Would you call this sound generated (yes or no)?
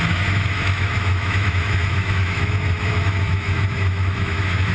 yes